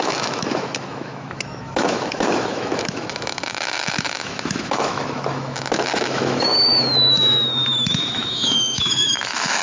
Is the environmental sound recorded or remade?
remade